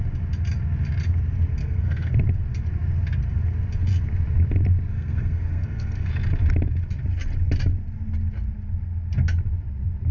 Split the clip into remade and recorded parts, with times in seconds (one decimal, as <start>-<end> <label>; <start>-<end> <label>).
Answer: 0.0-1.6 recorded; 1.6-2.1 remade; 2.1-4.9 recorded; 4.9-6.1 remade; 6.1-10.1 recorded